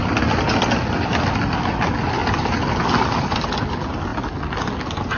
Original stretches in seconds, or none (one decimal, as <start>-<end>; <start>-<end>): 0.0-5.2